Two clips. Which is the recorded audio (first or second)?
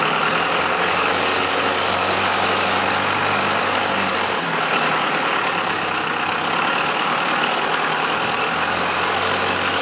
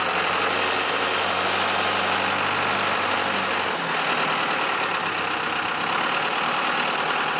second